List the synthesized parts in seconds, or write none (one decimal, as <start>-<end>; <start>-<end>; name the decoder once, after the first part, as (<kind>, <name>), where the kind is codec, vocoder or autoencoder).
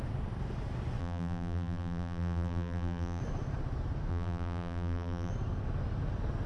1.0-3.2 (vocoder, BigVGAN v2); 4.1-5.3